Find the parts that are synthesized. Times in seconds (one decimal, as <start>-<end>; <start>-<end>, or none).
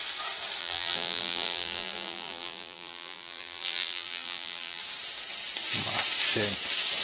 0.6-4.8